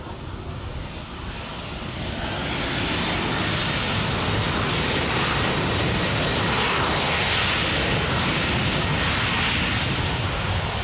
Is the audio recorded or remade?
recorded